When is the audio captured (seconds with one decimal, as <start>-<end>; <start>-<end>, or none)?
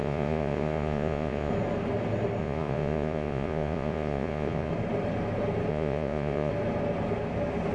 1.5-2.4; 4.7-5.7; 6.5-7.7